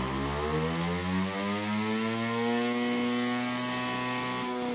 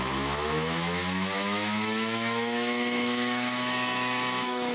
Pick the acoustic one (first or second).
first